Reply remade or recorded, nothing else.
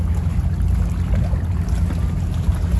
recorded